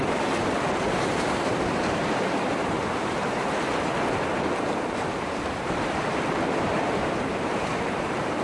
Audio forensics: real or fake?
fake